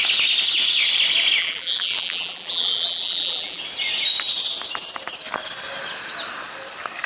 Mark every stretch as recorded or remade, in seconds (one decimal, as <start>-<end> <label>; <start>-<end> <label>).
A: 0.0-1.4 recorded; 1.4-3.6 remade; 3.6-7.1 recorded